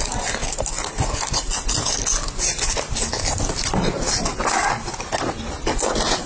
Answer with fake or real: real